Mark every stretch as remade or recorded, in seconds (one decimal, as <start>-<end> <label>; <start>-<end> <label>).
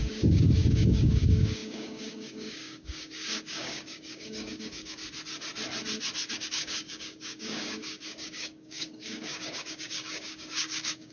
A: 0.0-5.0 remade; 5.0-6.3 recorded; 6.3-11.1 remade